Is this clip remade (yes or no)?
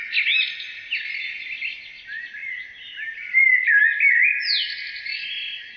no